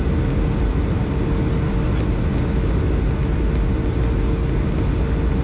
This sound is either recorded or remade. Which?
recorded